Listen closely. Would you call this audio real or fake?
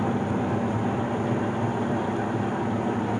fake